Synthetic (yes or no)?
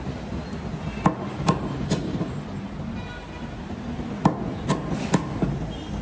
no